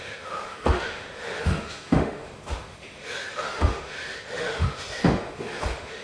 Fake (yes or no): yes